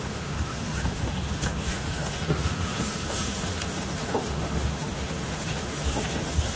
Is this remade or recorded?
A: remade